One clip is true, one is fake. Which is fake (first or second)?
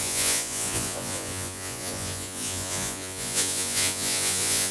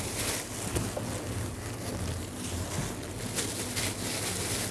first